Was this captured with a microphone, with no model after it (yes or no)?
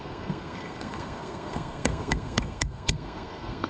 no